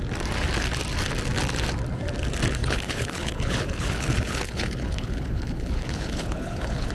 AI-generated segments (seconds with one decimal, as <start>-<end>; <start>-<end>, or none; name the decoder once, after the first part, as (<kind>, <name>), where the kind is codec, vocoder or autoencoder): 2.6-6.9 (codec, HILCodec)